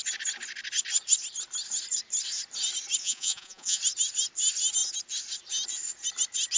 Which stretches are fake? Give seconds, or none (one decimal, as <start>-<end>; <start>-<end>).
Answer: 3.0-3.8